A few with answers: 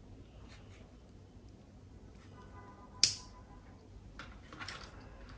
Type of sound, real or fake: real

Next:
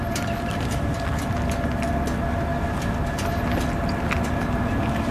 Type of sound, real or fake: real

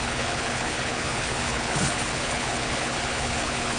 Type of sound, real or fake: fake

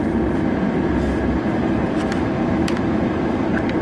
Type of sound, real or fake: real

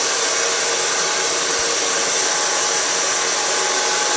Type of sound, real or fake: real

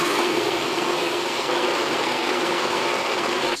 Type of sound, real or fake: fake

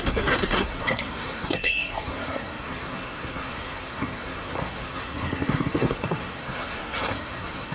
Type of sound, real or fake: fake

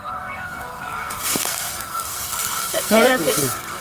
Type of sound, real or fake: fake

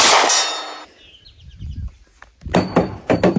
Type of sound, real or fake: real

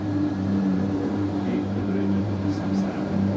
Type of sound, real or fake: fake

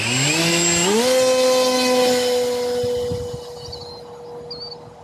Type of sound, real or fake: real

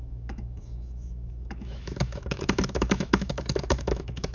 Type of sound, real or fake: fake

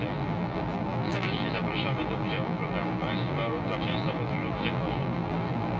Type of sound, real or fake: fake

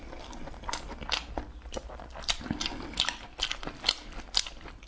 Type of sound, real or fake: real